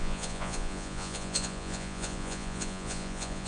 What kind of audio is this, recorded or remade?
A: remade